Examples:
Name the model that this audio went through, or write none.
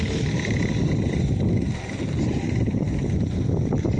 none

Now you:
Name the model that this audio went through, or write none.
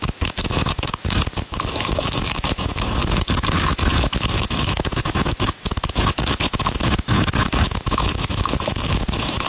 autoencoder, DAC-VAE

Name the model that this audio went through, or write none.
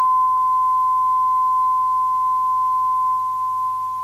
none